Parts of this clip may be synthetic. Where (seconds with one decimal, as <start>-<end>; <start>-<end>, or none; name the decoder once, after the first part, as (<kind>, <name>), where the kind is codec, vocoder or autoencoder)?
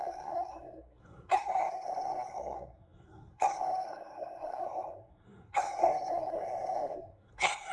0.0-7.7 (codec, SNAC)